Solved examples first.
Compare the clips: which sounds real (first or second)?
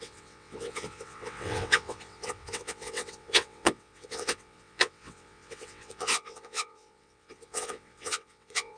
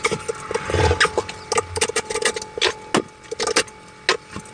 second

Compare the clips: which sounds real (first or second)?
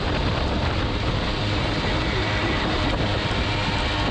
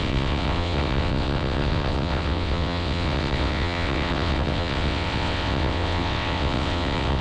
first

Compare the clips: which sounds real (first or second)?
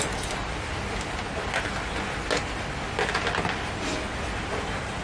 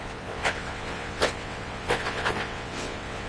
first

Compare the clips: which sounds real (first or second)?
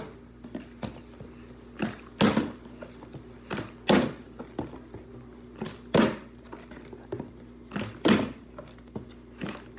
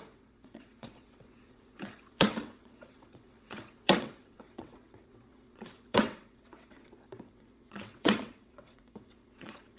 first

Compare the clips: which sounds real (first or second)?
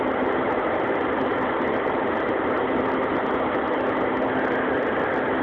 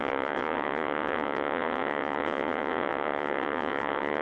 first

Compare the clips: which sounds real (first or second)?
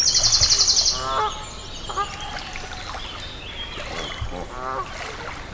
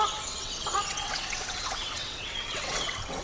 first